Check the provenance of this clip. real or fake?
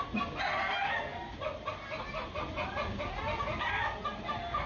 real